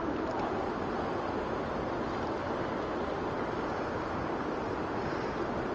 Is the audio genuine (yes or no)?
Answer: yes